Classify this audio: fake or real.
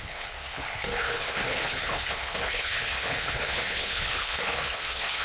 fake